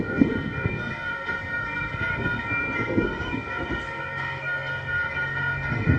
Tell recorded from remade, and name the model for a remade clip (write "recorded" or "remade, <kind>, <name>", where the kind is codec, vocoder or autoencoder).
remade, codec, SNAC